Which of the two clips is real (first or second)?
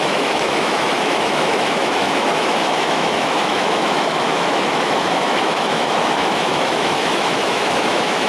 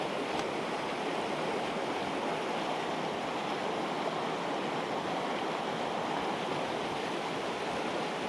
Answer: second